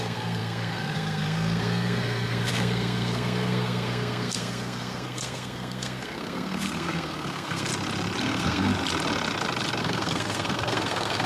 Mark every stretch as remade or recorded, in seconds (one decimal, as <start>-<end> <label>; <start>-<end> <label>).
0.0-7.7 remade; 7.7-8.2 recorded; 8.2-8.7 remade; 8.7-9.8 recorded; 9.8-11.3 remade